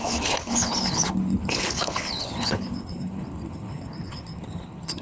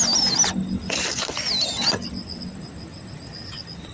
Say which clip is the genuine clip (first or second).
second